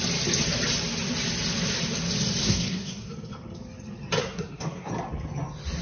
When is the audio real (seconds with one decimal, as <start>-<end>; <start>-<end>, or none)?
0.0-2.4; 3.1-4.2; 4.9-5.8